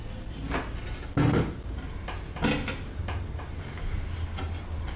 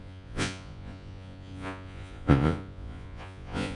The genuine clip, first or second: first